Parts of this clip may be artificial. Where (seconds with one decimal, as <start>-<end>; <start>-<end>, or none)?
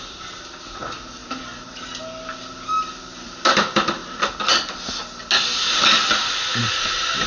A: none